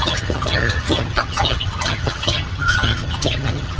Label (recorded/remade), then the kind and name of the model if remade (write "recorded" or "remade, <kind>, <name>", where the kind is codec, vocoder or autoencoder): remade, vocoder, HiFi-GAN